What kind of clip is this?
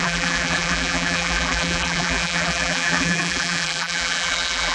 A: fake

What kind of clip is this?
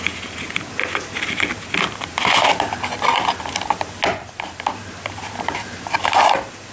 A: real